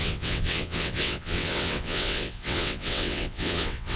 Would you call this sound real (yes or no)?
no